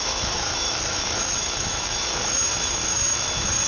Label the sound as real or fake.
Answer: fake